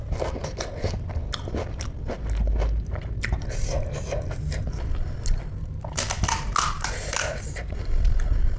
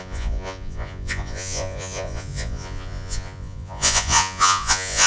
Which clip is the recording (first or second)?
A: first